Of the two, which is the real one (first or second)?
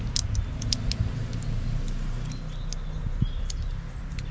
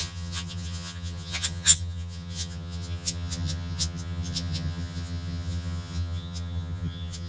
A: first